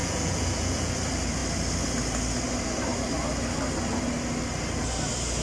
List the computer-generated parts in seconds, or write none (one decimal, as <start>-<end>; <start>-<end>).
0.0-0.9